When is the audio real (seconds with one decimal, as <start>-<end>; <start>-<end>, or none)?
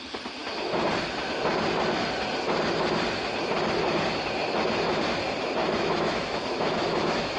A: 0.0-5.6